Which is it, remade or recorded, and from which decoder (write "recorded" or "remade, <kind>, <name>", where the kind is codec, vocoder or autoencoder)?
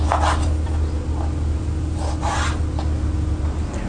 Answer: recorded